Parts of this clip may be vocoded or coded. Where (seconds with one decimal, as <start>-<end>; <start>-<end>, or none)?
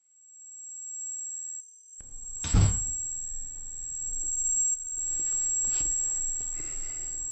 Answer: 1.6-2.8; 4.1-5.0